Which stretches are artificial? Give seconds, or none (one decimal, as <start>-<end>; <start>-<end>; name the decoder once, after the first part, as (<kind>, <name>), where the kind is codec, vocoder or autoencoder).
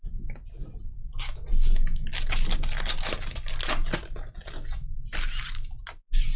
none